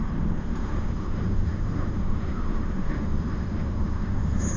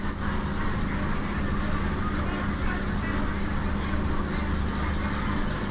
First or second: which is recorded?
second